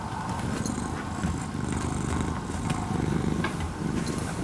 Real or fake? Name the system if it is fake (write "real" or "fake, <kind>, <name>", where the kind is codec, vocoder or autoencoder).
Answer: real